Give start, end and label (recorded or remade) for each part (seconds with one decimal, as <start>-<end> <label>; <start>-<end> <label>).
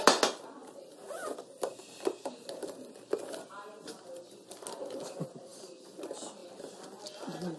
0.0-5.5 recorded; 5.5-6.0 remade; 6.0-7.6 recorded